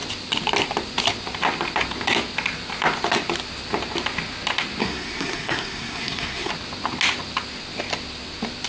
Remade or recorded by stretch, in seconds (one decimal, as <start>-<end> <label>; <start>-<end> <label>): 0.0-4.8 recorded; 4.8-6.5 remade; 6.5-8.7 recorded